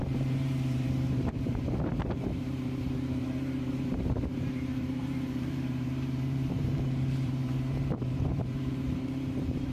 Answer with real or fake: fake